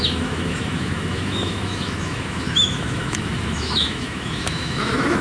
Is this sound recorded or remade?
remade